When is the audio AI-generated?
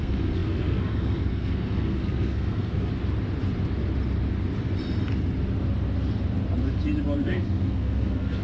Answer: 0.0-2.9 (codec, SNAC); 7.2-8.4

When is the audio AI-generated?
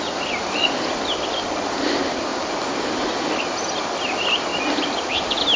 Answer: 0.0-2.3 (vocoder, BigVGAN v2); 3.4-4.5; 5.1-5.6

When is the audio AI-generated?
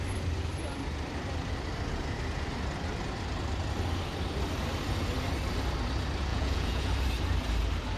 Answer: 6.3-6.9 (vocoder, Vocos)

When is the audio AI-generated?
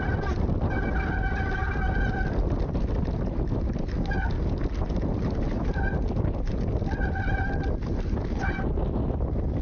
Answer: none